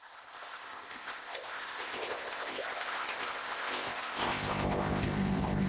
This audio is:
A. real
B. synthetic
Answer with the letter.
B